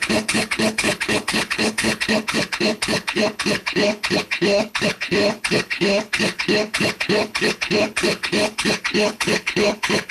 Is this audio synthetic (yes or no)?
yes